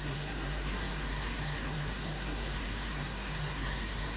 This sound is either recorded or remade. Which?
remade